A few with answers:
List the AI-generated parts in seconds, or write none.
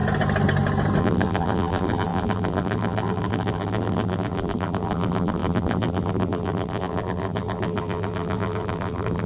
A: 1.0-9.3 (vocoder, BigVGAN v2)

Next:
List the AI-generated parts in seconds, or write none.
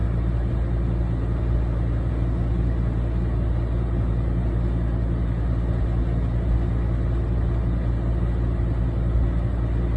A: none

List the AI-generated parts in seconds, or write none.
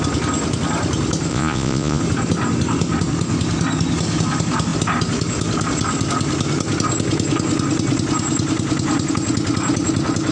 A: 1.3-2.0 (vocoder, Vocos)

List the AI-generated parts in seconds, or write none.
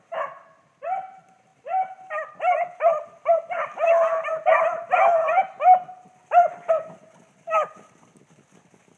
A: none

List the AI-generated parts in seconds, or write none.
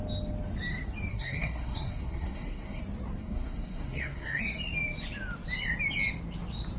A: 1.1-2.8 (codec, SNAC); 3.2-4.4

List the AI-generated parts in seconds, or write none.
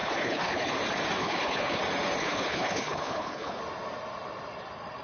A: 0.0-0.7 (codec, HILCodec); 1.2-1.8; 2.2-3.6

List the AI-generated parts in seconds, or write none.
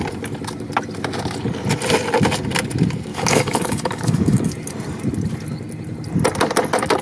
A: 3.1-4.5 (codec, DAC)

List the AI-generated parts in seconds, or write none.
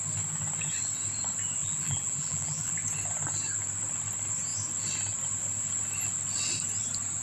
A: 1.6-2.7 (vocoder, BigVGAN v2)